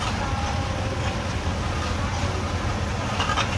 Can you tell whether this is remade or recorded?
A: recorded